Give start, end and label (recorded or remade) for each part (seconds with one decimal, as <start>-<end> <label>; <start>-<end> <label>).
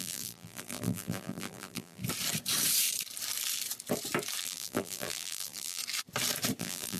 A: 0.0-2.0 remade; 2.0-4.4 recorded; 4.4-5.8 remade; 5.8-6.6 recorded; 6.6-7.0 remade